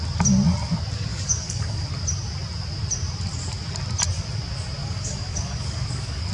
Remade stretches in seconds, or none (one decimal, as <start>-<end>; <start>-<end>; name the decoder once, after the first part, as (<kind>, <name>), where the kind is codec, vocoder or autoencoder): 1.1-1.9 (codec, DAC); 4.8-6.3